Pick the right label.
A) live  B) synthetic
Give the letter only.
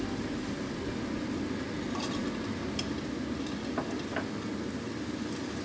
A